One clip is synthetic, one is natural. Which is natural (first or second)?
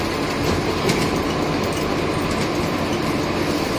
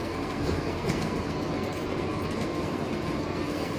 first